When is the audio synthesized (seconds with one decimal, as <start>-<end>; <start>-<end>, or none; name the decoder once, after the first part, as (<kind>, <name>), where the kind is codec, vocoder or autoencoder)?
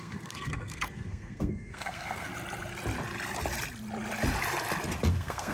0.0-2.3 (codec, SNAC); 5.1-5.5